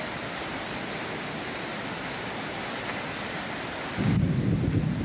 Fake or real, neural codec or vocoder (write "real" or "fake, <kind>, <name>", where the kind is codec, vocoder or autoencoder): real